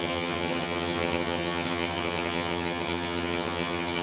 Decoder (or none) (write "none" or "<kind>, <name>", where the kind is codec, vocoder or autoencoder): vocoder, HiFi-GAN